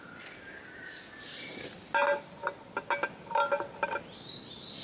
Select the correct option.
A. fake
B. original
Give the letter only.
B